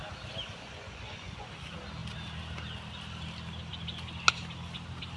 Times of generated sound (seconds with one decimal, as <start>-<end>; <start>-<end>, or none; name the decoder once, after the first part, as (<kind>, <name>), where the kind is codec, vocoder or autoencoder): 0.4-1.5 (vocoder, Vocos)